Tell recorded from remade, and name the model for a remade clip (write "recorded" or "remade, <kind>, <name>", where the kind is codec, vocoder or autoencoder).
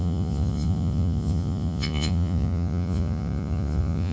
remade, vocoder, Vocos